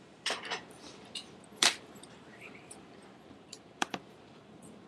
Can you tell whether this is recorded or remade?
remade